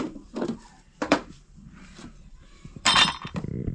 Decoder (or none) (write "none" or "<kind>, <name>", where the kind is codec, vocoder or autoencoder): vocoder, BigVGAN v2